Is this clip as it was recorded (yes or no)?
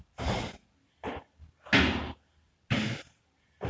yes